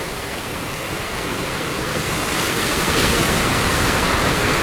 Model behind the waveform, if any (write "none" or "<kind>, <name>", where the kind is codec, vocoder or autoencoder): codec, SNAC